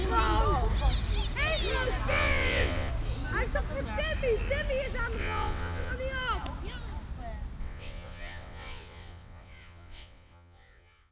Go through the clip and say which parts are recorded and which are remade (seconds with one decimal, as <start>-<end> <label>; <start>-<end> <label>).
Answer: 0.0-2.1 recorded; 2.1-2.9 remade; 2.9-5.2 recorded; 5.2-5.9 remade; 5.9-7.6 recorded; 7.6-11.1 remade